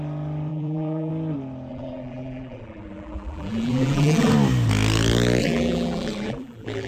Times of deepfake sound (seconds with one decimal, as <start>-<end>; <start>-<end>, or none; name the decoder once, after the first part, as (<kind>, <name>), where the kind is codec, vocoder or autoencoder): 0.5-1.1 (vocoder, BigVGAN v2); 1.7-4.3; 5.4-6.9